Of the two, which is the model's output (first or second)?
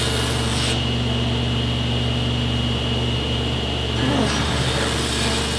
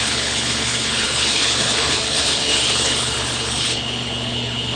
second